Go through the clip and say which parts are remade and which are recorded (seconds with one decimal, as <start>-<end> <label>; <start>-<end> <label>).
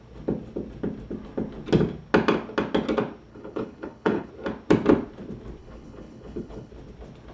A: 0.0-3.3 recorded; 3.3-4.3 remade; 4.3-5.6 recorded; 5.6-6.7 remade; 6.7-7.3 recorded